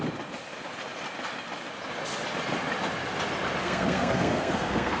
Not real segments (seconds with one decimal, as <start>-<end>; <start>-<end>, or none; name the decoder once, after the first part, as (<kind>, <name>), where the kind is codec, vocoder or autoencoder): 3.6-5.0 (codec, SNAC)